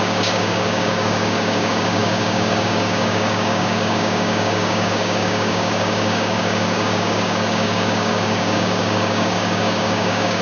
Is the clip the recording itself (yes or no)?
no